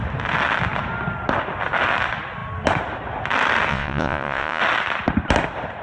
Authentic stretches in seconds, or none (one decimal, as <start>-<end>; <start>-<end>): 0.0-3.7; 4.6-5.8